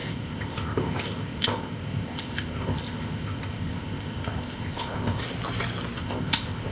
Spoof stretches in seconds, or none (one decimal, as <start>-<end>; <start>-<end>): 0.0-5.2; 6.0-6.7